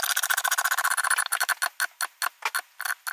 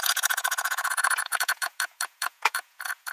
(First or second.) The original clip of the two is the first